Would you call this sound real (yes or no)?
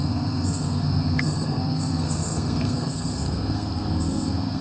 no